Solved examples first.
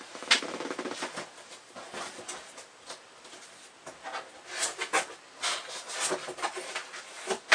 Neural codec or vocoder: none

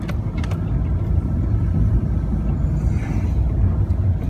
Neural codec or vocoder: none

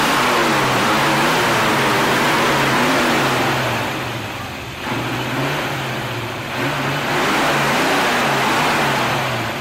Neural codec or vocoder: none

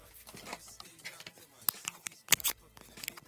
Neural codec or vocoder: none